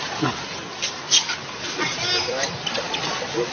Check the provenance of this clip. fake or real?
real